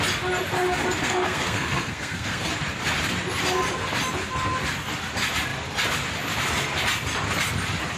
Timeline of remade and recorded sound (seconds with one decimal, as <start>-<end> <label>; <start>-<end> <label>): 0.0-1.0 recorded; 1.0-2.5 remade; 2.5-8.0 recorded